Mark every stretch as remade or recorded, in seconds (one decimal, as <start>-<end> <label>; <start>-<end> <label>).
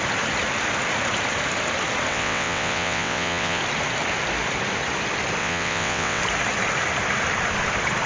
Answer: 0.0-2.1 recorded; 2.1-3.6 remade; 3.6-5.4 recorded; 5.4-6.2 remade; 6.2-8.1 recorded